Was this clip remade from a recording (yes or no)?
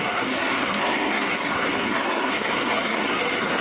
yes